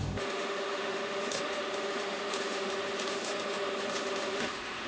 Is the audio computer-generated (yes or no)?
yes